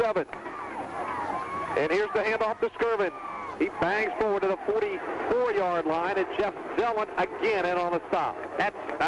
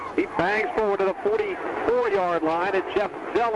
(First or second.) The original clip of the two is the first